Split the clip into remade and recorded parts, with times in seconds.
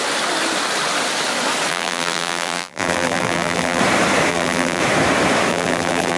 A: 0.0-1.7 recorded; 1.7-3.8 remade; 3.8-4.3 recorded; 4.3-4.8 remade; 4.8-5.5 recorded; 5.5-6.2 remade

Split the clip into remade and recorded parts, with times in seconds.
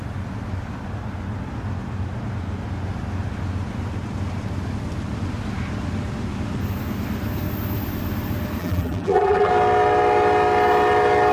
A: 0.0-8.6 recorded; 8.6-9.5 remade; 9.5-11.3 recorded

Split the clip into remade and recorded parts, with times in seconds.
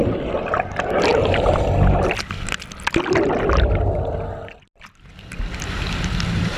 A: 0.0-1.1 recorded; 1.1-2.2 remade; 2.2-6.6 recorded